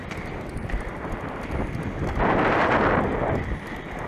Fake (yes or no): no